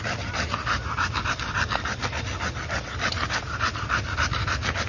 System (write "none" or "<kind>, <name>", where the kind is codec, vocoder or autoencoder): none